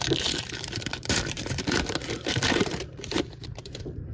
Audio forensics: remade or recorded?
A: remade